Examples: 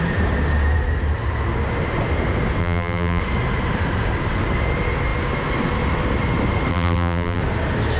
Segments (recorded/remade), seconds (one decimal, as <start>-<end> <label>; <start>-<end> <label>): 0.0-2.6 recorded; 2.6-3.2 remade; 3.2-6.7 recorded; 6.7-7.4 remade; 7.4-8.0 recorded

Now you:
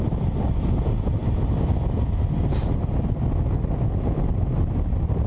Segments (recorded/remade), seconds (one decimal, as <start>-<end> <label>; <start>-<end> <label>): 0.0-5.3 recorded

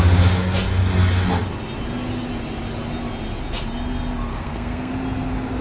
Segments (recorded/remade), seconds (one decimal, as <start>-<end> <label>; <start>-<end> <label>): 0.0-4.3 recorded; 4.3-4.9 remade; 4.9-5.6 recorded

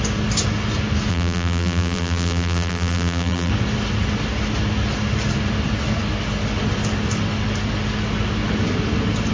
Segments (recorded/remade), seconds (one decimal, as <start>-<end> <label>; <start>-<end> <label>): 0.0-1.1 recorded; 1.1-3.5 remade; 3.5-9.3 recorded

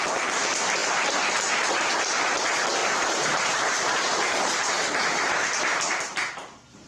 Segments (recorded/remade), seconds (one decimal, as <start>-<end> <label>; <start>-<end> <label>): 0.0-2.8 recorded; 2.8-5.6 remade; 5.6-6.9 recorded

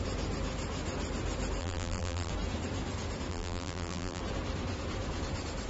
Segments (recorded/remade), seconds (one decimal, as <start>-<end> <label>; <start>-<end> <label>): 0.0-1.6 recorded; 1.6-2.3 remade; 2.3-3.3 recorded; 3.3-4.2 remade; 4.2-5.7 recorded